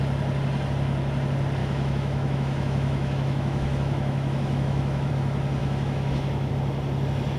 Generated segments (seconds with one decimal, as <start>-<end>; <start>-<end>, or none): 1.6-5.1; 5.6-6.5